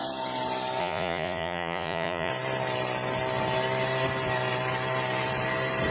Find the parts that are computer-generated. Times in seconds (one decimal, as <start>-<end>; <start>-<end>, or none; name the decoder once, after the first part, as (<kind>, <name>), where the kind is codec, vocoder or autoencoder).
0.8-2.3 (vocoder, Vocos)